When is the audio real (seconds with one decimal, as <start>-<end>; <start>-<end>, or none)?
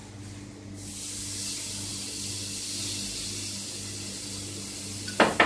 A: 0.0-5.5